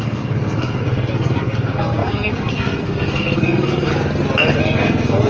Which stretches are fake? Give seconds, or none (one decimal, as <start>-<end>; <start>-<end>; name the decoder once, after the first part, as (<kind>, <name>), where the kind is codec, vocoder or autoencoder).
0.0-3.9 (codec, SNAC); 4.6-5.3